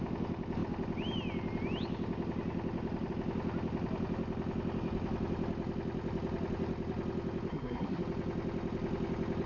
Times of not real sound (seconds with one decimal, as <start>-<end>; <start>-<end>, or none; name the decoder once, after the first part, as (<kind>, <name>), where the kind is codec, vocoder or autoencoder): 7.5-8.0 (codec, SNAC)